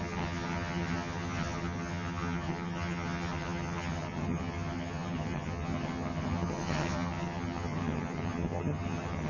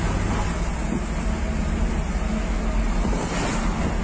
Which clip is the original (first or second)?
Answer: second